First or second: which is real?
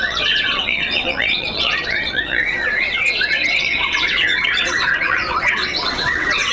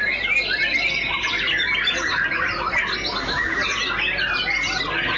second